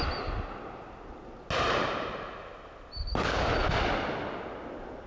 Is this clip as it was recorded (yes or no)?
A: yes